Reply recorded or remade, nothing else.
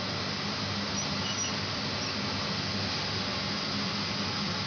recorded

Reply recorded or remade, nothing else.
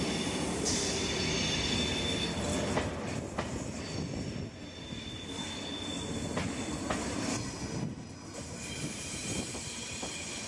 recorded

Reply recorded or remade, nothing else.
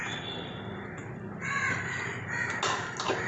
recorded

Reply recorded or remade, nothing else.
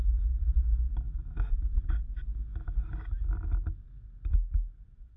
recorded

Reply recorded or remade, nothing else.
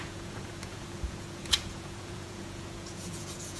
remade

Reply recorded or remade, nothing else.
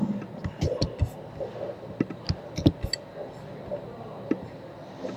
recorded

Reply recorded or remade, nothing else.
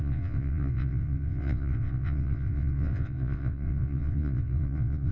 remade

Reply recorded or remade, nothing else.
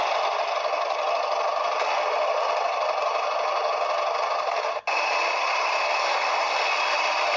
recorded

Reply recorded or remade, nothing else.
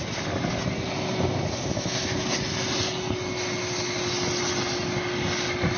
recorded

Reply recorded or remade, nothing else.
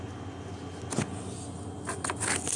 recorded